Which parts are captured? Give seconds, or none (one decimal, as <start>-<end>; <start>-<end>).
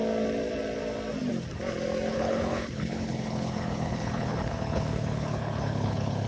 0.0-2.1